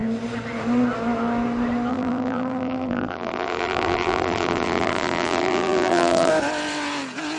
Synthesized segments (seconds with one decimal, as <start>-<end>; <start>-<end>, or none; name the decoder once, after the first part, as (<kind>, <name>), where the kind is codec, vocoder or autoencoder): 1.9-6.3 (vocoder, BigVGAN v2)